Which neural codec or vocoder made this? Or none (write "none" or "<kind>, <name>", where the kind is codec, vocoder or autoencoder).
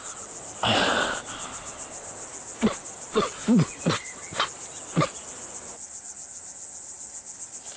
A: none